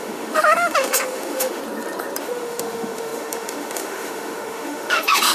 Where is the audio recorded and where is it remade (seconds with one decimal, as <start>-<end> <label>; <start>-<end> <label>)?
0.0-1.6 remade; 1.6-2.2 recorded; 2.2-5.3 remade